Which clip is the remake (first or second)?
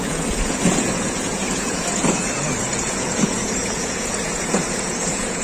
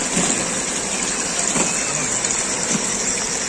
first